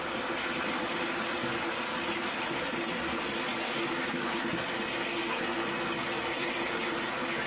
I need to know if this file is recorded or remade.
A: recorded